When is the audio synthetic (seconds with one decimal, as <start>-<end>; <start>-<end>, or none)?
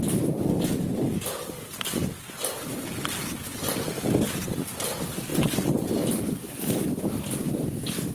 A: none